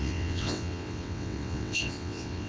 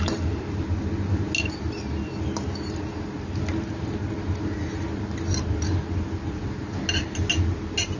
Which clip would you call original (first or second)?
second